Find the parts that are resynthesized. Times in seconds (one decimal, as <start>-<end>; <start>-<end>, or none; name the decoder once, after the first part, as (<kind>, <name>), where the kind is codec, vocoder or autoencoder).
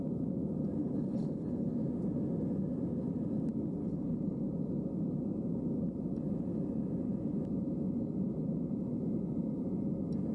0.8-1.7 (codec, HILCodec); 3.8-4.4